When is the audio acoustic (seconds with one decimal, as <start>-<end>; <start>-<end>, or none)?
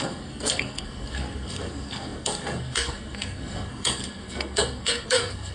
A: none